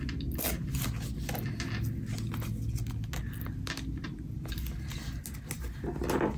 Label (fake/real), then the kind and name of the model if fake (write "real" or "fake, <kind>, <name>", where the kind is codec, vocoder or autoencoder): real